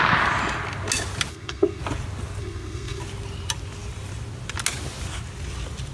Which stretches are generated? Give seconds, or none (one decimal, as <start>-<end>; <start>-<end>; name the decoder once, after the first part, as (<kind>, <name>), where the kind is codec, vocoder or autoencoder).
1.3-1.8 (codec, SNAC); 2.4-3.0